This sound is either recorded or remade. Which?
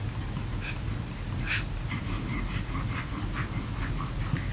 recorded